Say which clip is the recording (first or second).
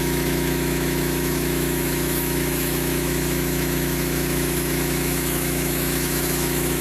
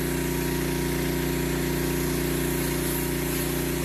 second